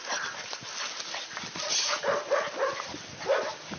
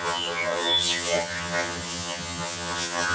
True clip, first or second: first